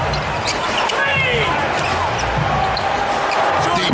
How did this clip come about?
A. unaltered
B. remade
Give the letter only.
A